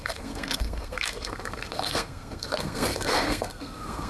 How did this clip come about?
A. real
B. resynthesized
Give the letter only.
B